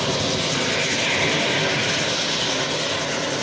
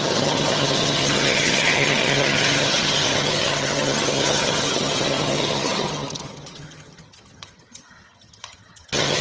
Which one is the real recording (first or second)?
first